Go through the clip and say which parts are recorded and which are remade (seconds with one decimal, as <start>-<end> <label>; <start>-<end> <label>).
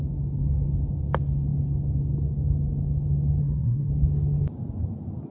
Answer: 0.0-3.4 recorded; 3.4-3.9 remade; 3.9-5.3 recorded